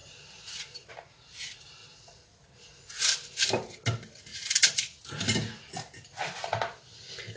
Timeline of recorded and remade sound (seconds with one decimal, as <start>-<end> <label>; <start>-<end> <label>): 0.0-7.4 recorded

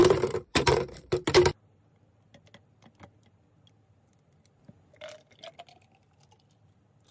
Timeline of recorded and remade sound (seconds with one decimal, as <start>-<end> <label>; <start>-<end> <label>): 0.0-0.5 recorded; 0.5-1.1 remade; 1.1-7.1 recorded

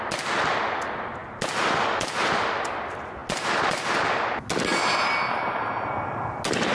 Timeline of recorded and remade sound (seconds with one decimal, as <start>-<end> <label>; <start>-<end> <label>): 0.0-6.7 recorded

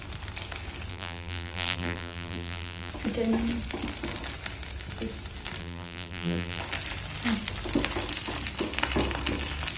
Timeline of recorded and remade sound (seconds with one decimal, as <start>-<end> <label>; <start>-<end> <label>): 0.0-0.9 recorded; 0.9-2.9 remade; 2.9-5.6 recorded; 5.6-6.6 remade; 6.6-9.8 recorded

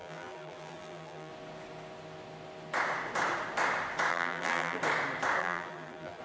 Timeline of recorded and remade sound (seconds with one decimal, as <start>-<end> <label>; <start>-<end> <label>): 0.0-1.3 remade; 1.3-4.1 recorded; 4.1-4.8 remade; 4.8-5.4 recorded; 5.4-6.2 remade

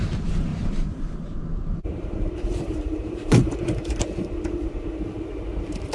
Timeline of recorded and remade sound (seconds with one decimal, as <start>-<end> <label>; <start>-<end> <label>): 0.0-0.5 recorded; 0.5-4.0 remade; 4.0-5.9 recorded